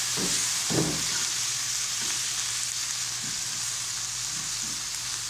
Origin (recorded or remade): recorded